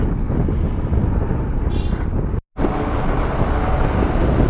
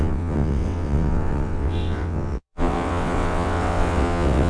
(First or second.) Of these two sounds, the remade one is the second